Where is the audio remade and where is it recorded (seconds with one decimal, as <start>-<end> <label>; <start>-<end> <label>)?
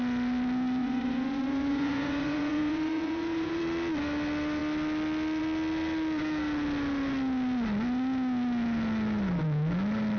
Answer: 0.0-0.8 recorded; 0.8-3.6 remade; 3.6-10.2 recorded